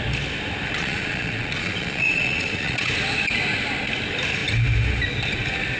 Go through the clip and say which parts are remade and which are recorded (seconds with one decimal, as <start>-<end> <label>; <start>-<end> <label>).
0.0-0.8 recorded; 0.8-2.9 remade; 2.9-5.8 recorded